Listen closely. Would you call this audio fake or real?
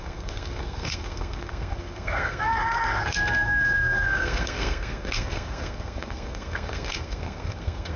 fake